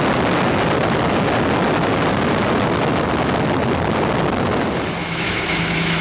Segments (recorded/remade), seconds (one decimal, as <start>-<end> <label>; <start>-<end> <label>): 0.0-5.0 recorded; 5.0-6.0 remade